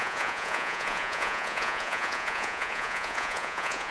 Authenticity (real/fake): fake